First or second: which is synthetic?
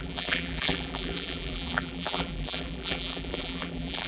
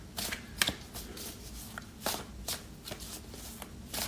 first